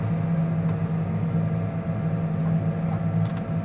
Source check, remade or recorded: recorded